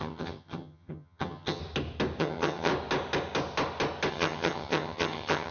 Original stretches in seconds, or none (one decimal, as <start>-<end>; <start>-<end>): 1.6-2.2; 2.7-4.1